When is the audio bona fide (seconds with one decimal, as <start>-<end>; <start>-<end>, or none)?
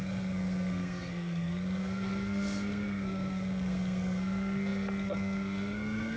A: none